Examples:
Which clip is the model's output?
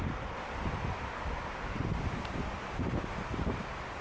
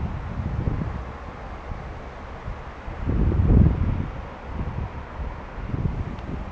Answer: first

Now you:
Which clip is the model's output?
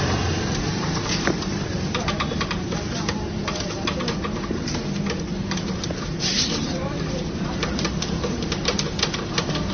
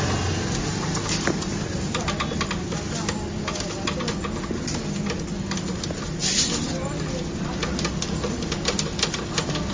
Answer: first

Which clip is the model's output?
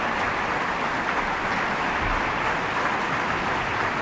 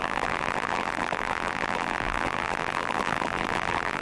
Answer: second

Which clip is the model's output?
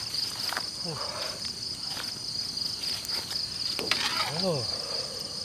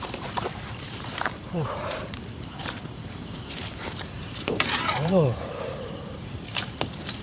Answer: second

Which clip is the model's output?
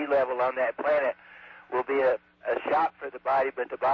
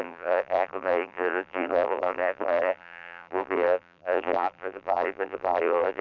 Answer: second